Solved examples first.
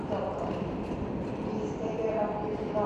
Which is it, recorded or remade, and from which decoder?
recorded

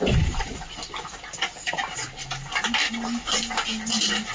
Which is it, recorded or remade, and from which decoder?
recorded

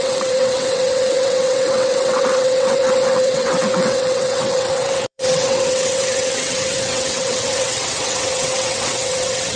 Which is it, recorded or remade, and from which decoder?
remade, vocoder, WaveNeXt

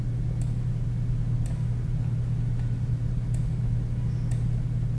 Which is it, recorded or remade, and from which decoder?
recorded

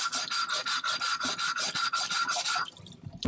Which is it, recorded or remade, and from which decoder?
remade, vocoder, BigVGAN v2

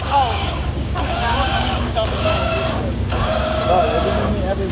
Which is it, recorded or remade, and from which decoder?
remade, codec, DAC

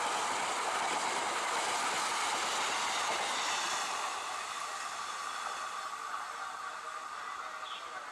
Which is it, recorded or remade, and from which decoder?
recorded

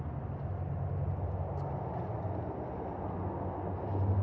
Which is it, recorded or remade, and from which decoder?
recorded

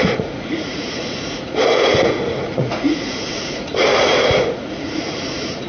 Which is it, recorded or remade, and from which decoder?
remade, vocoder, Vocos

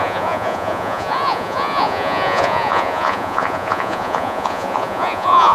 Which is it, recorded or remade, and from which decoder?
remade, vocoder, Vocos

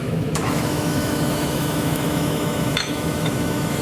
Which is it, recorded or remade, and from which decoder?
remade, autoencoder, DAC-VAE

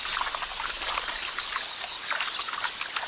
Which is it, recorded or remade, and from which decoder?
recorded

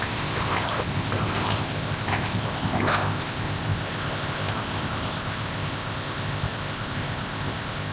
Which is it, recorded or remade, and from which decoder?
remade, codec, ZipCodec